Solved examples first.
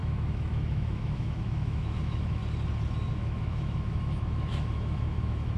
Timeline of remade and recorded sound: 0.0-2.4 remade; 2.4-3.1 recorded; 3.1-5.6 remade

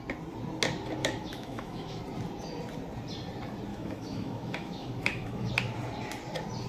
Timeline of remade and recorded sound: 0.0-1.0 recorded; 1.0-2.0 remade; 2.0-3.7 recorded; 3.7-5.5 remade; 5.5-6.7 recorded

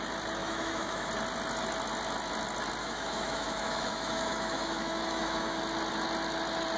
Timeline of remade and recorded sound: 0.0-0.4 recorded; 0.4-1.1 remade; 1.1-2.8 recorded; 2.8-5.6 remade; 5.6-6.8 recorded

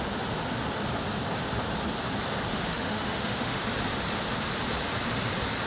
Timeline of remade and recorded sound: 0.0-2.5 recorded; 2.5-3.6 remade; 3.6-5.7 recorded